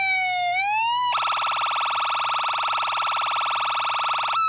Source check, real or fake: real